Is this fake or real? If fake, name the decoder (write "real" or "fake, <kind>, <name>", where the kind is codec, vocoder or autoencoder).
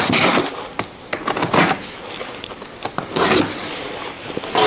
real